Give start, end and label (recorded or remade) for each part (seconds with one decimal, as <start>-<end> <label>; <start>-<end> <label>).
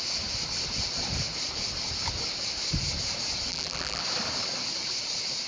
0.0-3.5 recorded; 3.5-4.0 remade; 4.0-5.5 recorded